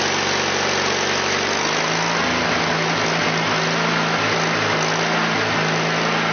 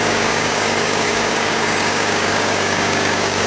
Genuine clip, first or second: first